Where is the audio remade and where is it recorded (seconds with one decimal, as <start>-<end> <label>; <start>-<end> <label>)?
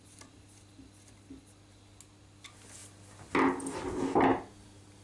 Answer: 0.0-5.0 recorded